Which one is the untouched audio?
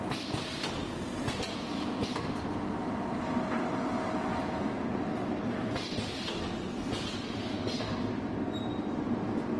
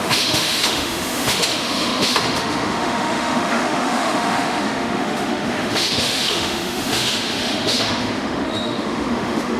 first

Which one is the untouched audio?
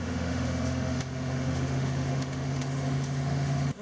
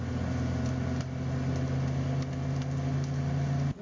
second